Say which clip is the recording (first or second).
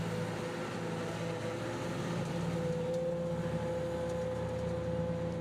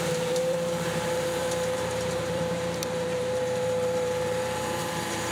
first